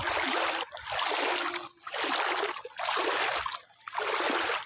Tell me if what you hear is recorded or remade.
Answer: recorded